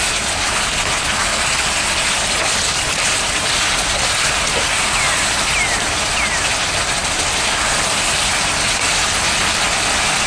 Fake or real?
real